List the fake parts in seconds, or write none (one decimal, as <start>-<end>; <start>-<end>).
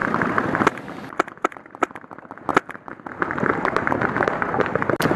none